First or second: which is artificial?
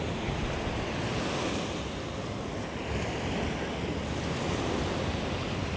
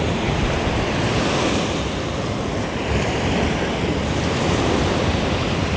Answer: second